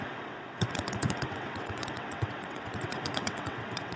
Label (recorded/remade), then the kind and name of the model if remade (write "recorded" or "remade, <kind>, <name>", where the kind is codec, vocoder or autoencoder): remade, vocoder, WaveNeXt